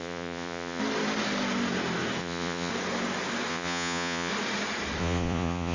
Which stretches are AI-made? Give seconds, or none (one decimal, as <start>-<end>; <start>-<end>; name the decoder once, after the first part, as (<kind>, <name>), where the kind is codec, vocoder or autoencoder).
0.0-0.8 (vocoder, Vocos); 2.2-2.7; 3.5-4.3; 5.0-5.7